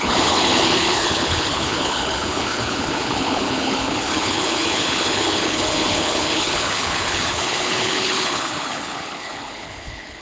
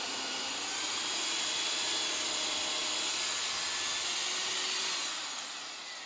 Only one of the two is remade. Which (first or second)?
first